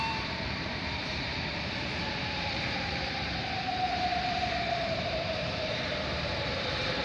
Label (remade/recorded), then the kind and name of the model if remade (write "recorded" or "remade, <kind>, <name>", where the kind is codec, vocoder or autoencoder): remade, vocoder, BigVGAN v2